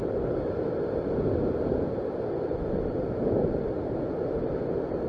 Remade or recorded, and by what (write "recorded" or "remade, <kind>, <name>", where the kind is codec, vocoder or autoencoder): recorded